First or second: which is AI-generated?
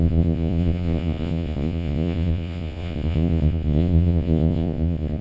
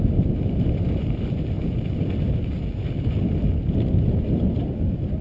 first